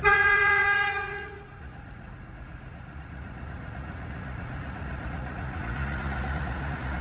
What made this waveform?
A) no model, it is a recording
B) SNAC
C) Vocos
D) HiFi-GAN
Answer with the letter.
C